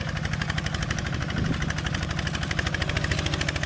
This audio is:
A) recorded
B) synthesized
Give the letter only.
A